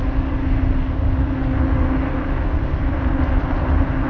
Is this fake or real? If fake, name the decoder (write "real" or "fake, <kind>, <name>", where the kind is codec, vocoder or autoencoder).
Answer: real